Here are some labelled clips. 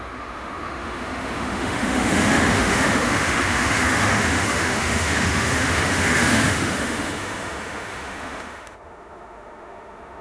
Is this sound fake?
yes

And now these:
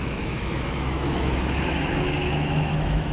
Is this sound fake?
yes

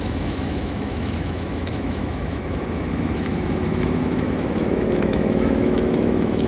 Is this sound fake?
yes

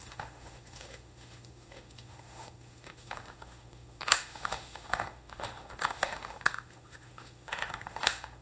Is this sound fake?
yes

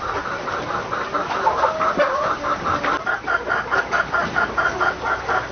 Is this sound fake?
no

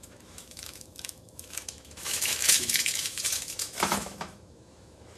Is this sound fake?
yes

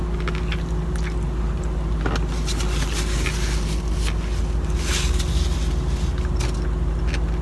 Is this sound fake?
no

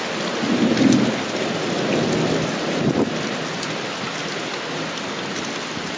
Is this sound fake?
no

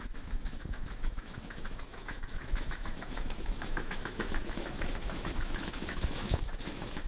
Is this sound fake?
yes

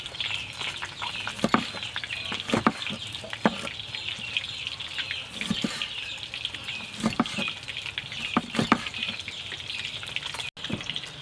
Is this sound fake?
no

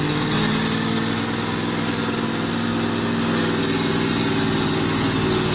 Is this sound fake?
no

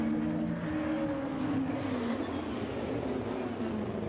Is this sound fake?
no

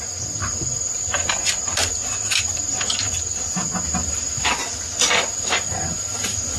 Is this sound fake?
no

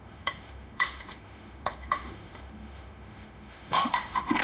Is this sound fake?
yes